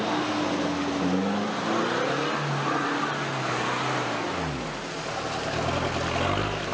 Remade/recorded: recorded